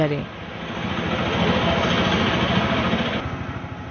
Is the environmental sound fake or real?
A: real